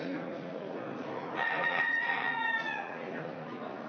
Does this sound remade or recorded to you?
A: remade